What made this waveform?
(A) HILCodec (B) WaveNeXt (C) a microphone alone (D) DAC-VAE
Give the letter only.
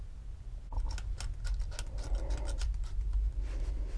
C